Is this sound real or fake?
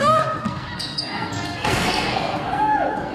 fake